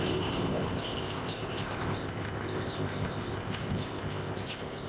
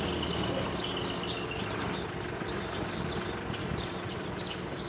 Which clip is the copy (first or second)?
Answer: first